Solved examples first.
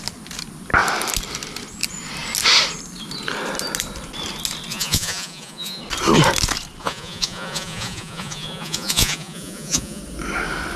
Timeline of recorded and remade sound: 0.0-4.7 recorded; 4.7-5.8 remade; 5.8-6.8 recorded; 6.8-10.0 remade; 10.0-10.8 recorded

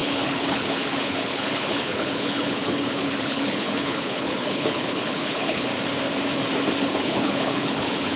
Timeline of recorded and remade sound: 0.0-5.7 remade; 5.7-6.8 recorded; 6.8-8.2 remade

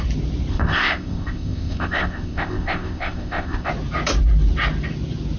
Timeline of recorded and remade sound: 0.0-0.5 recorded; 0.5-3.7 remade; 3.7-5.4 recorded

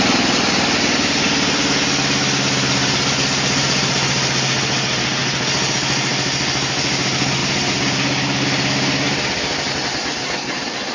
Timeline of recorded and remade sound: 0.0-10.9 recorded

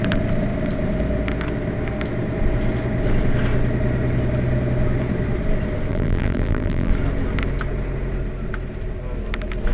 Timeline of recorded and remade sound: 0.0-5.9 recorded; 5.9-6.9 remade; 6.9-9.7 recorded

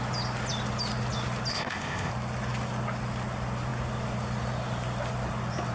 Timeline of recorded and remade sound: 0.0-1.5 recorded; 1.5-2.1 remade; 2.1-5.7 recorded